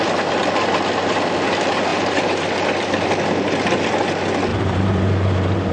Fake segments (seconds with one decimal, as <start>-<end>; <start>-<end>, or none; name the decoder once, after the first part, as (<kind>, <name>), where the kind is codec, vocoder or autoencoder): 1.9-2.5 (vocoder, BigVGAN v2); 4.5-5.7

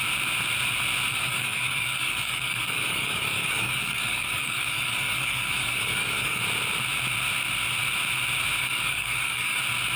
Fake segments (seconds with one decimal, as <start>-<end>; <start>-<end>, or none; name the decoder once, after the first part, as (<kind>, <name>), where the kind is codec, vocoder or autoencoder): 1.1-6.4 (codec, DAC); 8.6-9.6